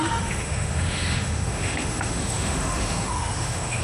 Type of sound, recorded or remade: remade